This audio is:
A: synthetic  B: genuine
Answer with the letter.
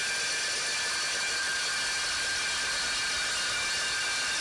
B